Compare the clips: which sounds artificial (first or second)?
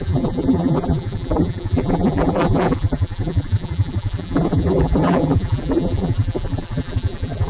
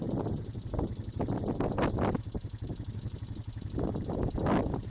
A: first